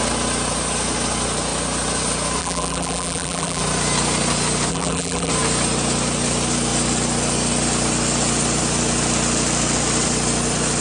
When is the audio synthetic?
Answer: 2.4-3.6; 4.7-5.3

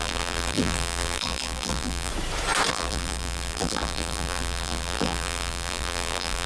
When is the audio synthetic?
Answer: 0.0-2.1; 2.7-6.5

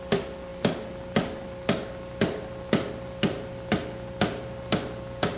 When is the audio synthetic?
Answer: none

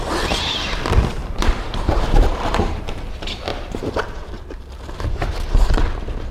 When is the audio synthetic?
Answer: 1.2-3.1; 3.5-4.6

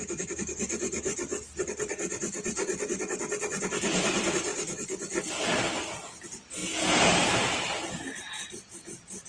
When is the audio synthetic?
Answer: 1.3-2.2; 6.6-8.2

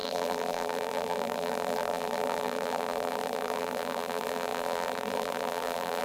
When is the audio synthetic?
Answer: 0.0-6.0

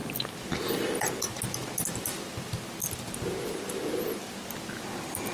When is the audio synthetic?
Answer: none